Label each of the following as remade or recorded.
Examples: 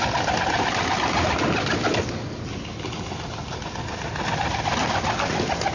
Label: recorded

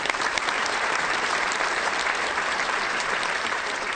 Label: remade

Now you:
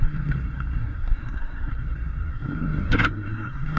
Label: remade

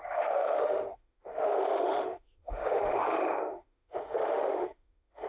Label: remade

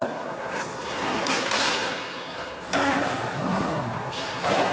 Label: remade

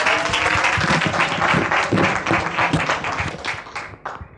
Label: recorded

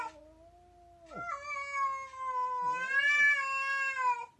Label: recorded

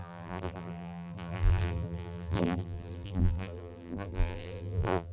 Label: remade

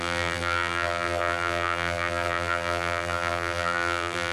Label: remade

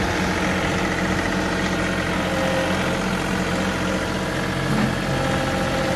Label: recorded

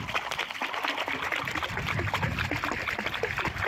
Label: recorded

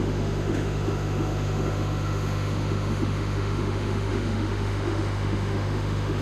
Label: remade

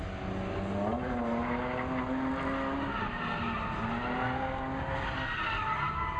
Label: recorded